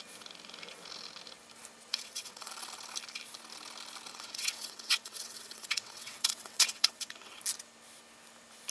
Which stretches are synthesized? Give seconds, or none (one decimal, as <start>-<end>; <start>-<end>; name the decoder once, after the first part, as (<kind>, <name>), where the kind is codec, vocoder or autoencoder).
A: 1.9-2.5 (vocoder, WaveNeXt); 4.1-7.4

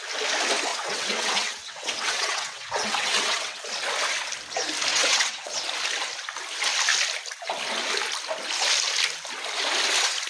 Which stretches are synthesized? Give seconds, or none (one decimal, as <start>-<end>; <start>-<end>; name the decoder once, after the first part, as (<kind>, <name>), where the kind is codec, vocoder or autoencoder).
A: 0.7-3.6 (vocoder, WaveNeXt); 4.9-5.5

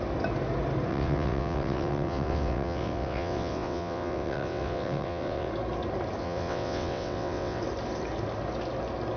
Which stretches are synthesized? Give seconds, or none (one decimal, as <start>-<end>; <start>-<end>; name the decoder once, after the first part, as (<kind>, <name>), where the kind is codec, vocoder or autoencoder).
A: 0.9-5.5 (vocoder, WaveNeXt); 6.2-7.6

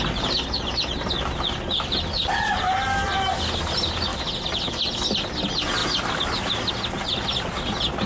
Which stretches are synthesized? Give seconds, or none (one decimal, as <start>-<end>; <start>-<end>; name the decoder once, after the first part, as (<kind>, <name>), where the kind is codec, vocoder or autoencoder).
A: none